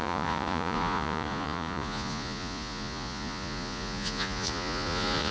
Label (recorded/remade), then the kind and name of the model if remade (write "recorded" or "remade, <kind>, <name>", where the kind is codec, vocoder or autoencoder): remade, vocoder, Vocos